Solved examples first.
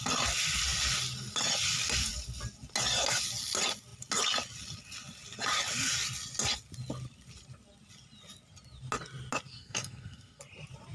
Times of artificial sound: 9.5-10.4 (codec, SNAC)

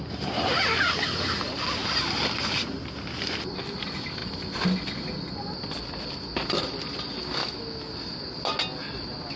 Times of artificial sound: 7.4-7.9 (autoencoder, DAC-VAE)

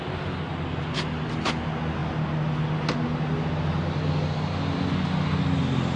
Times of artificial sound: none

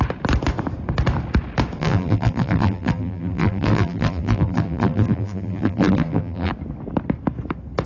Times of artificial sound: 1.8-6.5 (vocoder, BigVGAN v2)

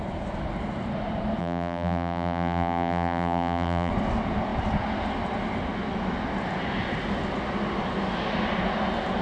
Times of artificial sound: 1.4-3.9 (vocoder, BigVGAN v2)

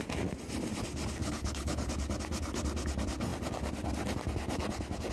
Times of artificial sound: 1.2-1.9 (codec, HILCodec)

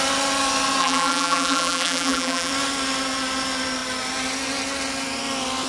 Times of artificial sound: 0.8-2.5 (vocoder, BigVGAN v2)